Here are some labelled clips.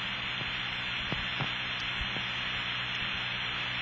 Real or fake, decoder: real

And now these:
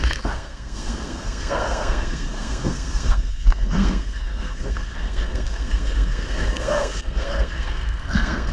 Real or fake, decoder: fake, codec, SNAC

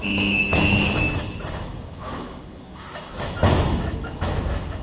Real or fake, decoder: fake, autoencoder, DAC-VAE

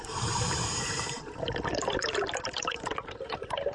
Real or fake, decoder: fake, vocoder, BigVGAN v2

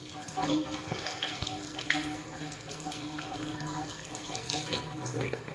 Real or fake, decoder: fake, codec, SNAC